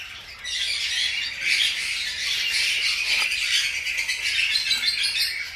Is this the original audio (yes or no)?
yes